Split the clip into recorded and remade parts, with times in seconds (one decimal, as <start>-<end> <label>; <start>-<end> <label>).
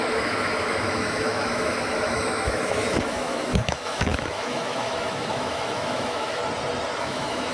0.0-6.4 remade; 6.4-7.0 recorded; 7.0-7.5 remade